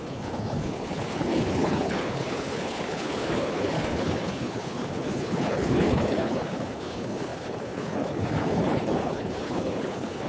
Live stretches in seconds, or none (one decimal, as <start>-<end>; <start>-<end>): none